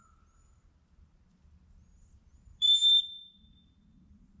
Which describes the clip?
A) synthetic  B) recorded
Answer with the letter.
B